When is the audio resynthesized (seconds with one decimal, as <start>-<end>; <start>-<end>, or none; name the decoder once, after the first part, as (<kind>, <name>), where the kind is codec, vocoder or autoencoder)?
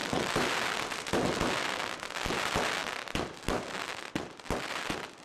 none